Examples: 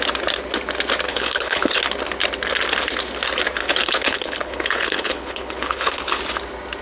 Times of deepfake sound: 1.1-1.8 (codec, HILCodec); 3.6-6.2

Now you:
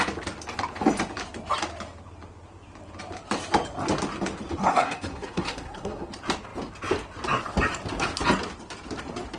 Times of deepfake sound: 4.7-6.1 (codec, SNAC)

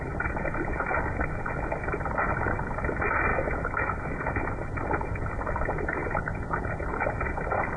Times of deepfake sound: 3.3-4.6 (autoencoder, DAC-VAE)

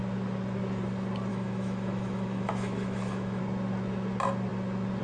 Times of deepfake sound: 1.3-3.4 (autoencoder, DAC-VAE)

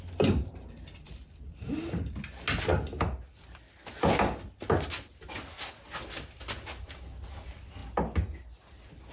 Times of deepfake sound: none